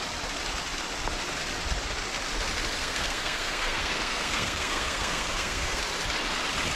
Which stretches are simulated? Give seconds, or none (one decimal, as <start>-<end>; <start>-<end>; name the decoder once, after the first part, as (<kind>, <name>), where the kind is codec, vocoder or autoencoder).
2.8-5.8 (codec, SNAC)